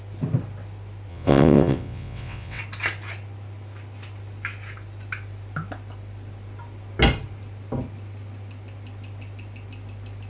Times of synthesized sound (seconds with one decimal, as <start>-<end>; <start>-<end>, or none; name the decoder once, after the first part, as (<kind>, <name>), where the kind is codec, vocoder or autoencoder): 1.1-2.6 (vocoder, WaveNeXt)